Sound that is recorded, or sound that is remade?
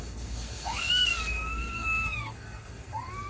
remade